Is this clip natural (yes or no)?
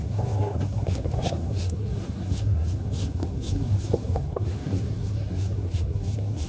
no